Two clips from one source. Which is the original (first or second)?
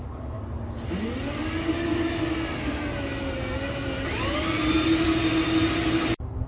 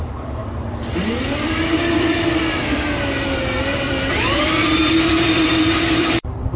first